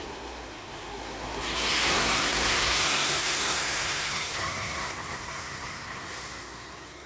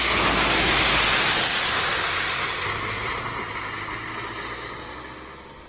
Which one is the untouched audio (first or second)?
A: second